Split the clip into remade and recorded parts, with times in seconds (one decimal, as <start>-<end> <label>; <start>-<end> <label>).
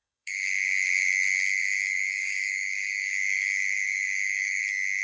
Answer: 0.0-1.1 remade; 1.1-1.6 recorded; 1.6-4.6 remade; 4.6-5.0 recorded